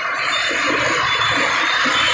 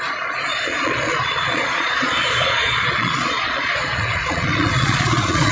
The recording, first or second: first